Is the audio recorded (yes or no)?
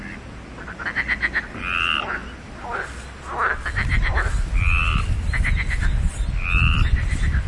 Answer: yes